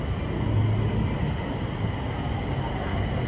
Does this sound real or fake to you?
real